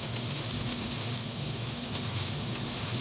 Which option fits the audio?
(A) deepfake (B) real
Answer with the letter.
A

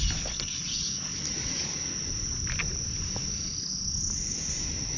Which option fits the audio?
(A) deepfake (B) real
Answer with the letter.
B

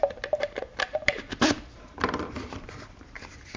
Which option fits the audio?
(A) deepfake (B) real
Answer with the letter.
A